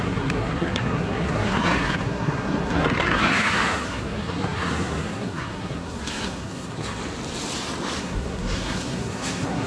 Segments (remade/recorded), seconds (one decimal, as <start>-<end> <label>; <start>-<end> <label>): 0.0-7.0 remade; 7.0-8.0 recorded; 8.0-9.7 remade